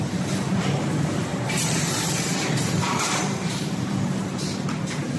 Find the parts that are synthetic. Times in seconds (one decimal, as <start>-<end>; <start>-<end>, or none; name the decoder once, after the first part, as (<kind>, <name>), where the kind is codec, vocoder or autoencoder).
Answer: 1.3-4.4 (vocoder, BigVGAN v2)